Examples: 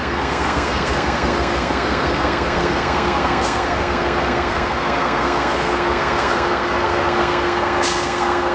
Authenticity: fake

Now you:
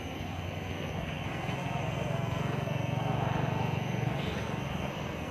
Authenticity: fake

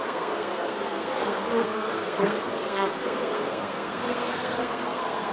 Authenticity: fake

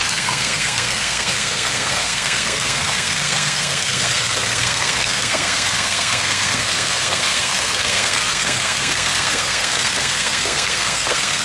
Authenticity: fake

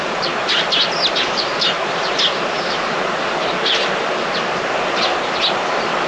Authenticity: real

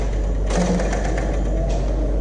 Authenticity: real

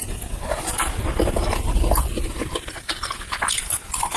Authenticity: real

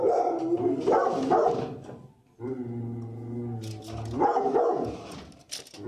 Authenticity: real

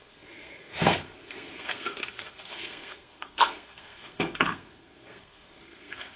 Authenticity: fake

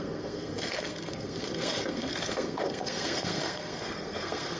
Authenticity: fake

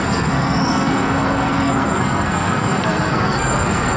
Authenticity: fake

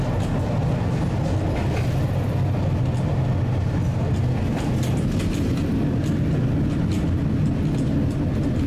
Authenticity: real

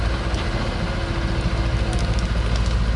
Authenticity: real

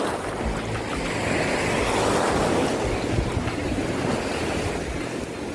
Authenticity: real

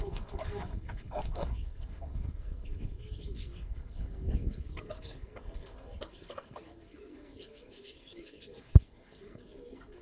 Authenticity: fake